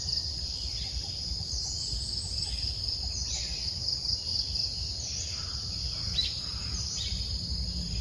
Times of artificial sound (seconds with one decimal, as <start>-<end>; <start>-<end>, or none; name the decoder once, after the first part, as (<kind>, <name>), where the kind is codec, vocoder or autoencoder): none